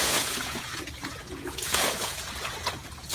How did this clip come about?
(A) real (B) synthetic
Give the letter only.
B